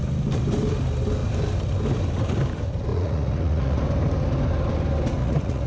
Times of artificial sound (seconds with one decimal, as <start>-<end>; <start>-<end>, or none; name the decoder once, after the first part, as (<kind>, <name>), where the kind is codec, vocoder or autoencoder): 2.9-3.8 (vocoder, Vocos); 5.2-5.7